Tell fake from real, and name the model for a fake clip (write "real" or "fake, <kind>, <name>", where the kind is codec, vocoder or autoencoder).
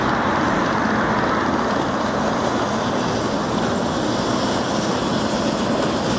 real